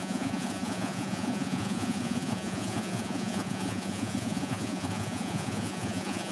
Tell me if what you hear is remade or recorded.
remade